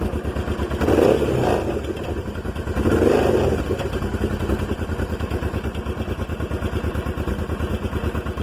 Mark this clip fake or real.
real